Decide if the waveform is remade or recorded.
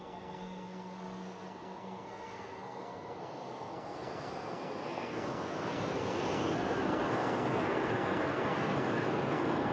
remade